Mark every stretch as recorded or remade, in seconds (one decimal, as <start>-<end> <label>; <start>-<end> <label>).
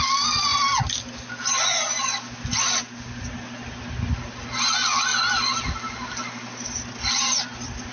0.0-7.9 recorded